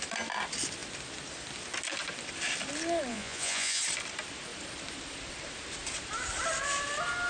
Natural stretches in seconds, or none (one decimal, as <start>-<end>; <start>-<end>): 0.0-3.1; 3.8-7.3